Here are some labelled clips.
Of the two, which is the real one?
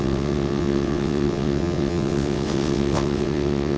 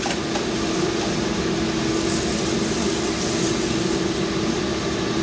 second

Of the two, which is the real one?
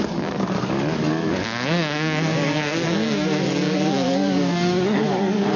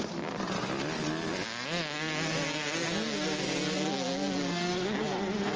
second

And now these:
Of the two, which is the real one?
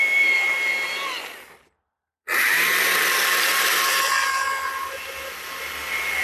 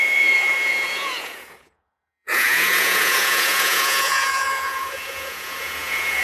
first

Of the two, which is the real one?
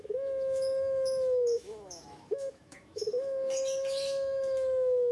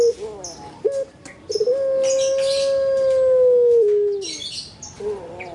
second